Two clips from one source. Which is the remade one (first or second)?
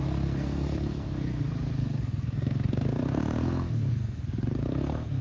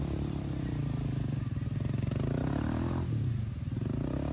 first